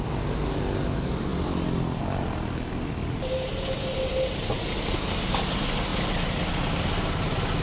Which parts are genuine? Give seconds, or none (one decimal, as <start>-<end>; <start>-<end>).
0.0-7.6